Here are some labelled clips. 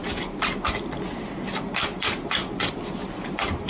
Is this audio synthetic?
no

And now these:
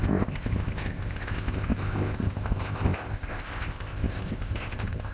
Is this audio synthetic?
yes